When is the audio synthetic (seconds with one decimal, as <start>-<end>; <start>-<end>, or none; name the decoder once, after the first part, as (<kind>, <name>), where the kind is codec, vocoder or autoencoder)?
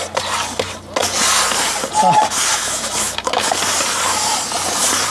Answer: 2.5-3.5 (autoencoder, DAC-VAE)